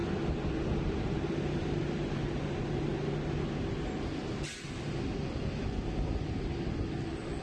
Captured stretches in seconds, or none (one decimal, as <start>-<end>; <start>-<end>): 0.0-1.6; 2.9-7.4